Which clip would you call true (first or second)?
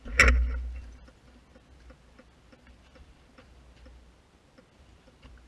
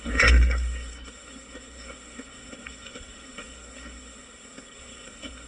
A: first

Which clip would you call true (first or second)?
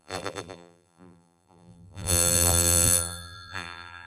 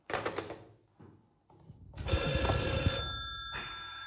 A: second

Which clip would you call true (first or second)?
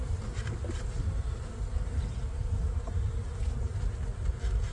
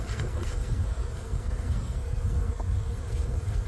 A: first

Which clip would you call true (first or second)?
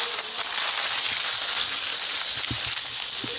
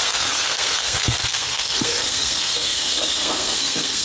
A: first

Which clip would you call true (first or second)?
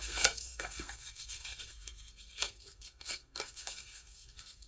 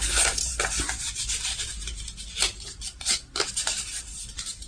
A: second